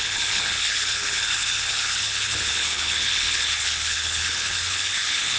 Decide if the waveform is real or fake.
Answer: fake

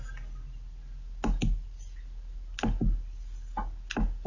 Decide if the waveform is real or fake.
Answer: real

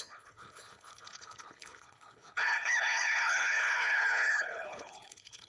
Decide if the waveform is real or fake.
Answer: fake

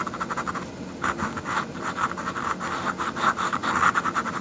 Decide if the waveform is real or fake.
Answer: real